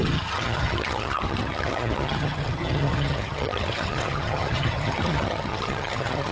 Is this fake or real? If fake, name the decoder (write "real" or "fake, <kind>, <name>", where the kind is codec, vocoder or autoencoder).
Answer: fake, vocoder, HiFi-GAN